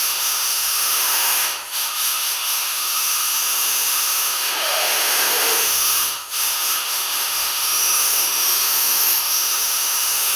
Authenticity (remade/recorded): remade